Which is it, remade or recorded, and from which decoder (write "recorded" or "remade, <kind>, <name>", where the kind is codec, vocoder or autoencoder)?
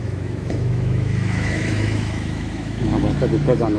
remade, autoencoder, DAC-VAE